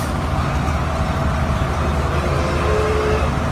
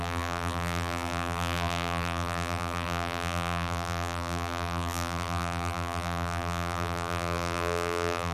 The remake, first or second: second